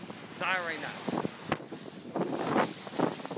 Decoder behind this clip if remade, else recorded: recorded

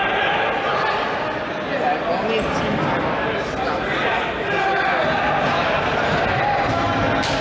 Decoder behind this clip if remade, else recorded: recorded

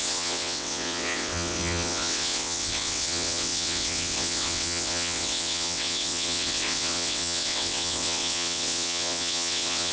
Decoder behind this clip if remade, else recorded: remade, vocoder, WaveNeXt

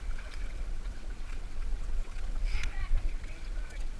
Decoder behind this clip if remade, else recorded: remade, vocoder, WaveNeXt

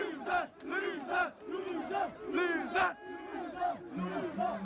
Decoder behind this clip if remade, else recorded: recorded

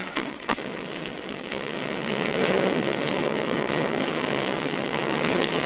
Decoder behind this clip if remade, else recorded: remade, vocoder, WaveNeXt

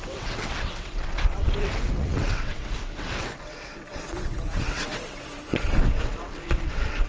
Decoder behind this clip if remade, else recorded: remade, vocoder, WaveNeXt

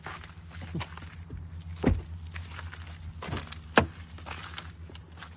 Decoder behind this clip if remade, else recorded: recorded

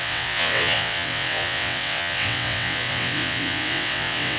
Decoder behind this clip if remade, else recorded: remade, vocoder, WaveNeXt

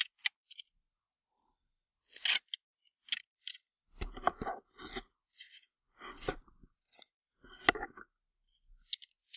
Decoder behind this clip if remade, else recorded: recorded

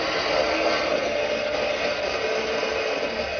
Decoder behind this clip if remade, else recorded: recorded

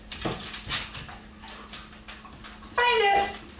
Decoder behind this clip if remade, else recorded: recorded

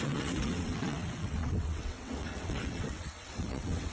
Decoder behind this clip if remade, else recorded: remade, vocoder, WaveNeXt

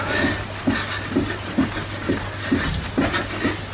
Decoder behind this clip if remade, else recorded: recorded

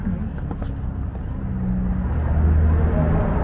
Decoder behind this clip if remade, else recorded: recorded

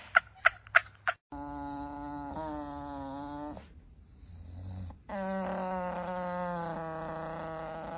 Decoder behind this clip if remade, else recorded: recorded